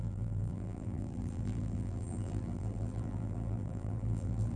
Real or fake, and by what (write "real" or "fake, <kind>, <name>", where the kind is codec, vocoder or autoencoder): fake, vocoder, BigVGAN v2